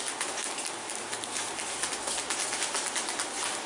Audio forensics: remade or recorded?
recorded